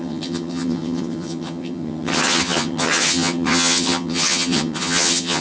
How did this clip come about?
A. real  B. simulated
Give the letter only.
B